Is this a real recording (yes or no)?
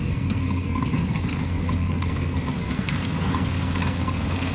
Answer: no